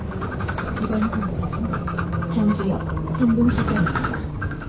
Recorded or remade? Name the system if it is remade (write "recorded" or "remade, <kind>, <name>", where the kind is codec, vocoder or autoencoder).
remade, codec, DAC